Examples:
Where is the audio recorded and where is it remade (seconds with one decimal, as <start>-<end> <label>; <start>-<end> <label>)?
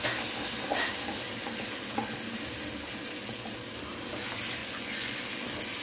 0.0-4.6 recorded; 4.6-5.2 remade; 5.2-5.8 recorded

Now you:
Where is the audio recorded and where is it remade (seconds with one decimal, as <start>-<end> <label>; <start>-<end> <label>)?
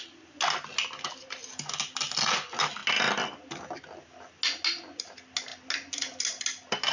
0.0-6.9 recorded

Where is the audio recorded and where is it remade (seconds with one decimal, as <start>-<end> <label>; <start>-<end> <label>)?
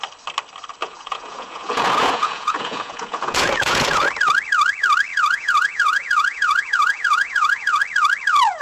0.0-0.8 recorded; 0.8-4.1 remade; 4.1-5.1 recorded; 5.1-7.8 remade; 7.8-8.6 recorded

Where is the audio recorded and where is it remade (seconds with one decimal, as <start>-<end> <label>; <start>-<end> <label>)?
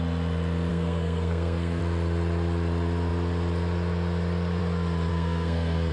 0.0-0.7 recorded; 0.7-1.8 remade; 1.8-5.1 recorded; 5.1-5.9 remade